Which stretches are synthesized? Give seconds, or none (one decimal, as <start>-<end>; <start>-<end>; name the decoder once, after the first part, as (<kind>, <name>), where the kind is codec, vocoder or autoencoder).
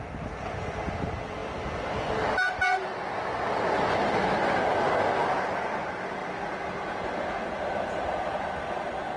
none